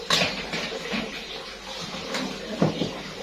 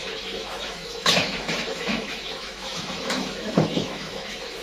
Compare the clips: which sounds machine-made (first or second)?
second